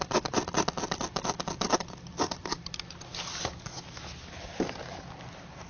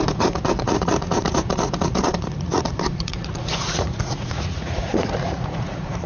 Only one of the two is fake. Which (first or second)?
second